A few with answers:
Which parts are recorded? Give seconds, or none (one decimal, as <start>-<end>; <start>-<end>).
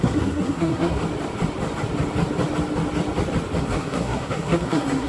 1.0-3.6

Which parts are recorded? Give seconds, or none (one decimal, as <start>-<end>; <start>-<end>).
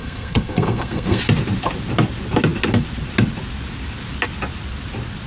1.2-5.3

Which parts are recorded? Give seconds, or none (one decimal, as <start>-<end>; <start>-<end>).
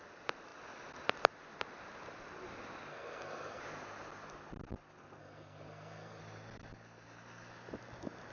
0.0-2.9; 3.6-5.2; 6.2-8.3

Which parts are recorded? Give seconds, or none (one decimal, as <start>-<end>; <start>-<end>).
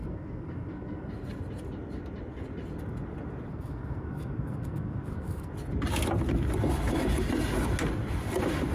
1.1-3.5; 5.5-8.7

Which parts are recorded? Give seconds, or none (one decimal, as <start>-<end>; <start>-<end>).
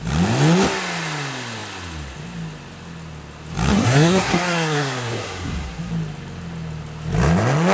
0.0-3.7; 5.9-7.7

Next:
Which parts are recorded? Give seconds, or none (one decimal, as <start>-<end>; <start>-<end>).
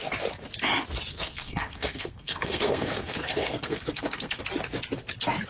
0.0-1.1; 4.4-5.5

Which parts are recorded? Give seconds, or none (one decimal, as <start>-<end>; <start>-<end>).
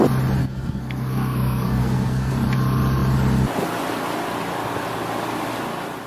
0.0-0.4; 2.3-6.1